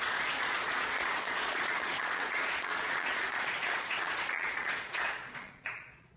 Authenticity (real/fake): fake